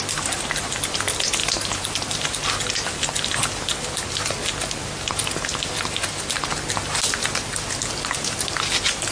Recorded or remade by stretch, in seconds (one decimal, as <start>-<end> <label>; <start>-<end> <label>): 0.0-1.4 recorded; 1.4-2.3 remade; 2.3-9.1 recorded